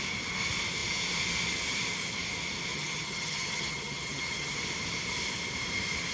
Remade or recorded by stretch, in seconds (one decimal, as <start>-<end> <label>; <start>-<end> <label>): 0.0-2.7 recorded; 2.7-4.6 remade; 4.6-6.1 recorded